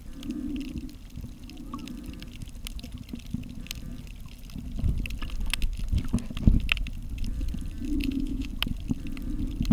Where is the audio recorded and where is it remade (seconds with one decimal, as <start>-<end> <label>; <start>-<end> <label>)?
0.0-8.0 recorded; 8.0-8.5 remade; 8.5-9.7 recorded

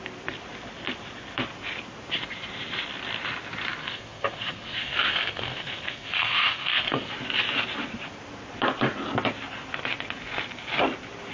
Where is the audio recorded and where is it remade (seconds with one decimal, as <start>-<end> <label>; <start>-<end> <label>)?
0.0-3.8 recorded; 3.8-7.1 remade; 7.1-11.3 recorded